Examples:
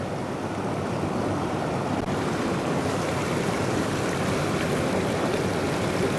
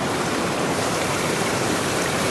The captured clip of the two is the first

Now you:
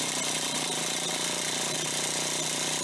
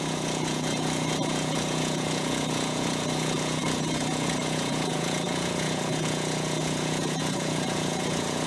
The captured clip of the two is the first